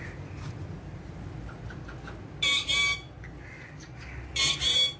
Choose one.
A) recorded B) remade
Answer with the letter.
A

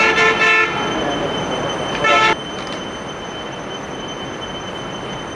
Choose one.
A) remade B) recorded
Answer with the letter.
A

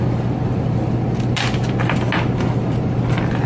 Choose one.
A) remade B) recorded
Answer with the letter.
B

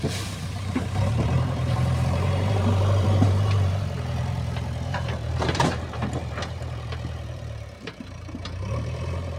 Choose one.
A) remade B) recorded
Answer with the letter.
A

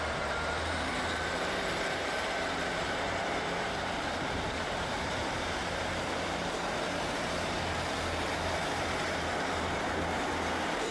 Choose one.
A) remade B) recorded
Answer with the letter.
A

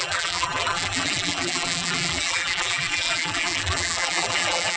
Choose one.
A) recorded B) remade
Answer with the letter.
B